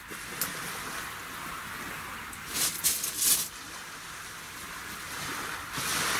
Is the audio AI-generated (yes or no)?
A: no